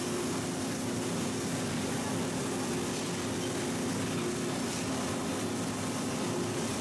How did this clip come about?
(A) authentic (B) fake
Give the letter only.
A